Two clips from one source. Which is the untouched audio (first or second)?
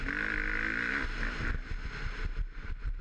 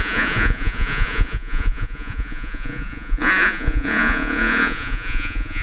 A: first